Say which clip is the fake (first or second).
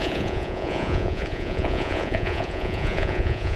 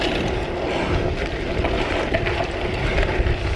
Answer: first